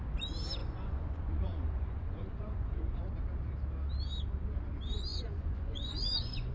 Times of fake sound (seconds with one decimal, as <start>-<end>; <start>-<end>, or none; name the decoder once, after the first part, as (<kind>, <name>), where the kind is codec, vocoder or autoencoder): 0.6-3.1 (vocoder, Vocos); 5.1-6.5